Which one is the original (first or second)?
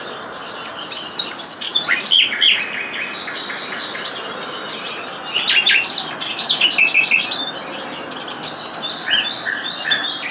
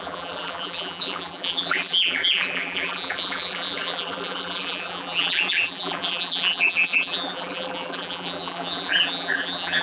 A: first